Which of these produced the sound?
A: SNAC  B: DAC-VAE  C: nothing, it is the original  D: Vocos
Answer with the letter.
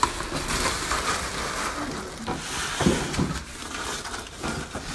C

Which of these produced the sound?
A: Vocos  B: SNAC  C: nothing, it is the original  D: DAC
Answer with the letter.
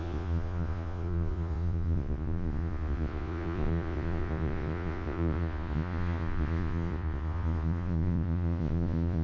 A